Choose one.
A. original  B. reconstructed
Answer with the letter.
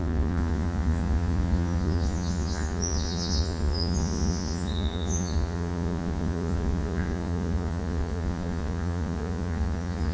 B